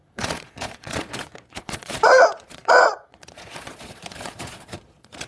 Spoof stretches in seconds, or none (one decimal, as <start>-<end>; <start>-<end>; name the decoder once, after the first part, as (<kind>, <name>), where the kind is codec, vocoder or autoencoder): 0.0-5.3 (vocoder, Vocos)